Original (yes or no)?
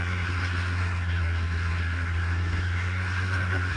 no